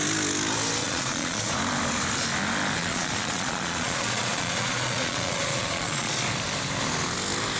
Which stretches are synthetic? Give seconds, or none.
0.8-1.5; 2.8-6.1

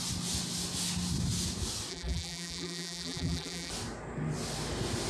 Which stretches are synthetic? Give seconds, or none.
1.9-3.7

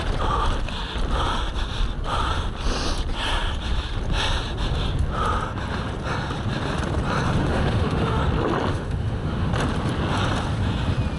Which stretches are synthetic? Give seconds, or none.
7.4-8.2; 8.7-9.5

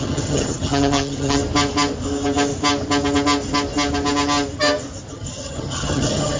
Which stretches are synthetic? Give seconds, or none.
0.0-1.4; 5.1-6.4

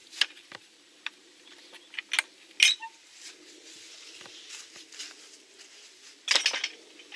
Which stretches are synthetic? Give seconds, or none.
none

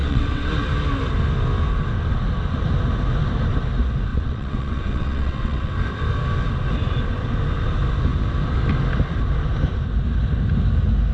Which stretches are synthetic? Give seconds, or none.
0.0-0.5; 4.1-5.7

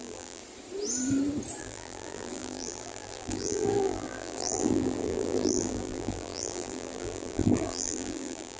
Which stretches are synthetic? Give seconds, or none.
0.0-0.4; 1.6-8.6